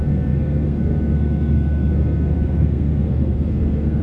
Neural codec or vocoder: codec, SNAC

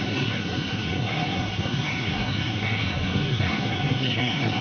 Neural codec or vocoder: codec, SNAC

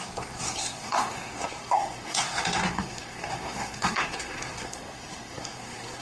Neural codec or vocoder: codec, SNAC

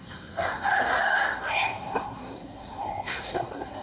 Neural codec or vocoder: codec, SNAC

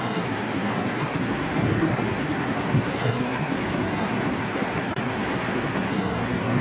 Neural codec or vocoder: codec, SNAC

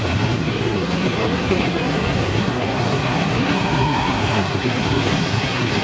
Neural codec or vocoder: codec, SNAC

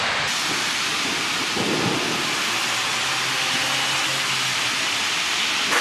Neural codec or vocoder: none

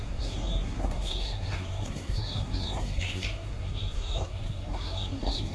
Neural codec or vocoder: codec, SNAC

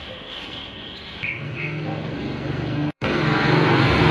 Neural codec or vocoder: codec, SNAC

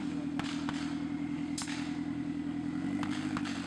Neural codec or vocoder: none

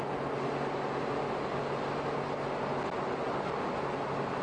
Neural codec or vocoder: none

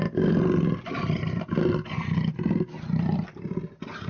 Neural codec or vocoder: none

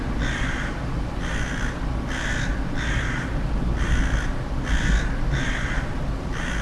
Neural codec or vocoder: none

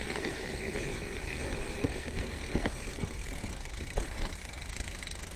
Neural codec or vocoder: codec, SNAC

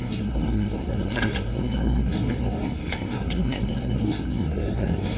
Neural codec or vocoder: codec, SNAC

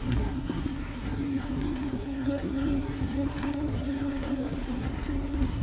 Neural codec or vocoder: codec, SNAC